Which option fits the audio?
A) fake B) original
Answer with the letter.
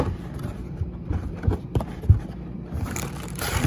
A